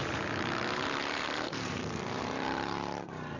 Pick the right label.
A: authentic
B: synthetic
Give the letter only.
B